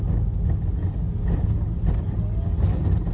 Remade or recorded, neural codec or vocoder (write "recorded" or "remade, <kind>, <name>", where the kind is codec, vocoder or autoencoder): recorded